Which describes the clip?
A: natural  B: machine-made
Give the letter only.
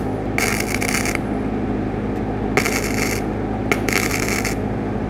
A